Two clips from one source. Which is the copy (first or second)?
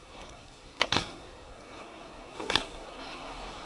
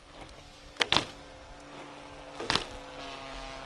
first